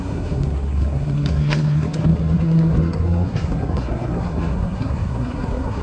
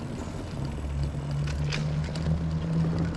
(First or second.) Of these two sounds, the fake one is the first